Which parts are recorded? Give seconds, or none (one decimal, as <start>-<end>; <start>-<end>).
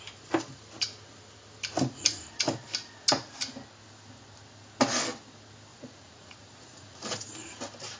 0.0-5.7; 7.2-8.0